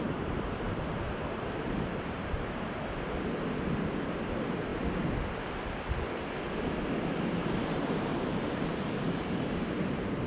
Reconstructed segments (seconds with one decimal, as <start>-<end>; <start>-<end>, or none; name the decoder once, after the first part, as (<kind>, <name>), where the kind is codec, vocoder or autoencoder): 0.0-4.7 (vocoder, BigVGAN v2); 7.2-10.3

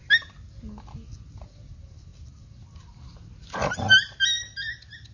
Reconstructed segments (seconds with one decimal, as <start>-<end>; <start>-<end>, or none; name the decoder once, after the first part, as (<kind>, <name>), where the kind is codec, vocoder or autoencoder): none

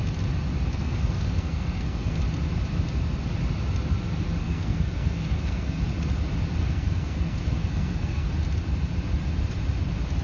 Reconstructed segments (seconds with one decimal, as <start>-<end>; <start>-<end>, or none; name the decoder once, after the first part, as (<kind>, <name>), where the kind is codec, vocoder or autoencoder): 0.7-2.2 (codec, SNAC); 4.4-5.8; 6.6-8.3

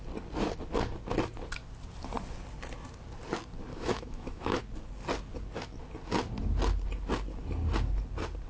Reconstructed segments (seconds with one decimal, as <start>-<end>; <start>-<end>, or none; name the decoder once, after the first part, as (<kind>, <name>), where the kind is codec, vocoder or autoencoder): 3.7-4.6 (autoencoder, DAC-VAE)

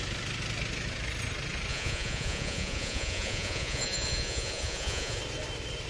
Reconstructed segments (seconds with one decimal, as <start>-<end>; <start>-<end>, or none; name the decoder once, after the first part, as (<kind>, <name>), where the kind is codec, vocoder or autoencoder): 1.7-5.2 (vocoder, Vocos)

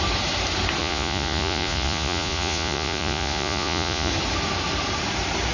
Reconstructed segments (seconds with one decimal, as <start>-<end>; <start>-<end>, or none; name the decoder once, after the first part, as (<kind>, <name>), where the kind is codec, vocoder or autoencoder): 0.8-4.1 (vocoder, Vocos)

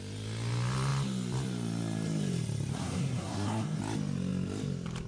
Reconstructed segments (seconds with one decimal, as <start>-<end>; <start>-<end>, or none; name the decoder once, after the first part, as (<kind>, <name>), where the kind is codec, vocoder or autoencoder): 2.7-3.8 (codec, SNAC)